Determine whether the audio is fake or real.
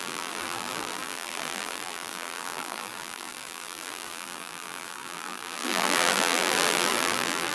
fake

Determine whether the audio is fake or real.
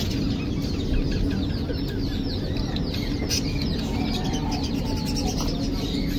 real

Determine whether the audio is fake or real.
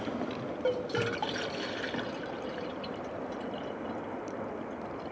real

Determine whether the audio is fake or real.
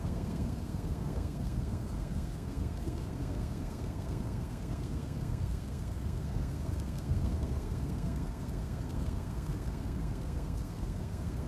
fake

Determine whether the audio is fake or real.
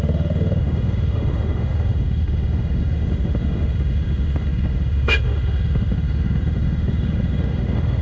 fake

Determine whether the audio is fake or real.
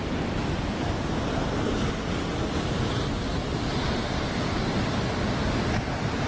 real